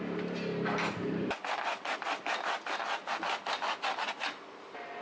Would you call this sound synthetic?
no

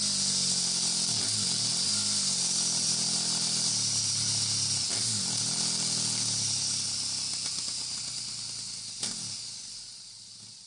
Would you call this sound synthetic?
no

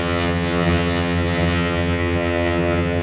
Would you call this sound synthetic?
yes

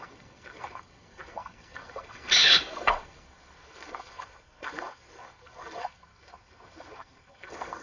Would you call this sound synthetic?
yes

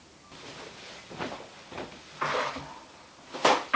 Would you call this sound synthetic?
no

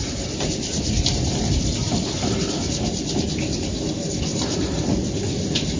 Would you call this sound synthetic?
no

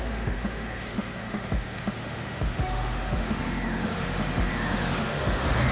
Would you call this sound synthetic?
yes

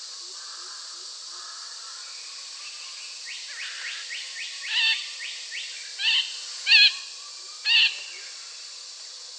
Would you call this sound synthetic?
no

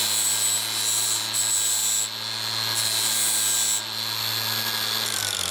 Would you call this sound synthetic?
no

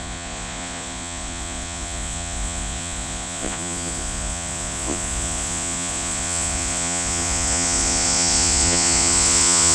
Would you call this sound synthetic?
yes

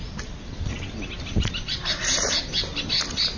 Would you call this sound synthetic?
no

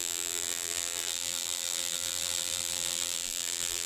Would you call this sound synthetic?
yes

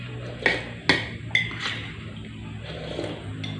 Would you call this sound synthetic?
no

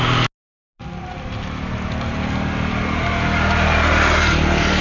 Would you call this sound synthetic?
no